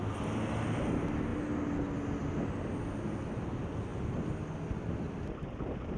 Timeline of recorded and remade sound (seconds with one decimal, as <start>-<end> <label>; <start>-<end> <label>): 0.0-6.0 recorded